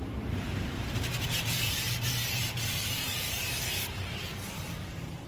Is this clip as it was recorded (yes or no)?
no